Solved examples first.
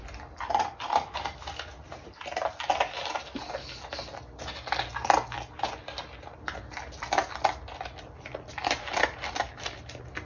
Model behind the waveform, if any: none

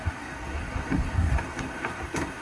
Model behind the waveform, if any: codec, SNAC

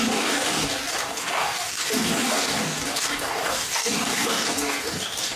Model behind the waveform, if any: codec, DAC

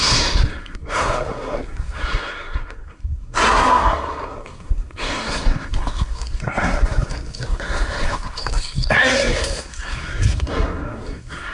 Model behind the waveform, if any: codec, SNAC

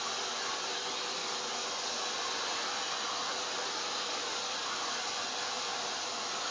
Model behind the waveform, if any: vocoder, Vocos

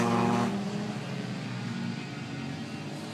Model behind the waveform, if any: none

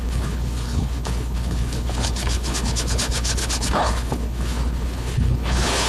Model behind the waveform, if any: codec, HILCodec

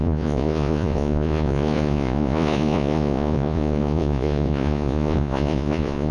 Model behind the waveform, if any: vocoder, Vocos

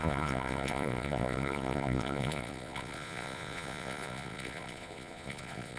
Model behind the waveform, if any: vocoder, Vocos